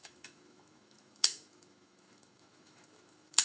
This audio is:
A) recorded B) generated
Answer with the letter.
B